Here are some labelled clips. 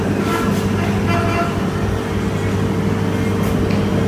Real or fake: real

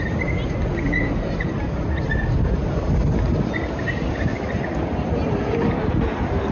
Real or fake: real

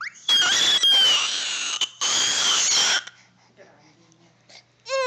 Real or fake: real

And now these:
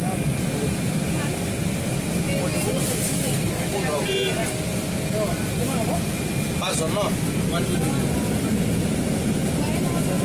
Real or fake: real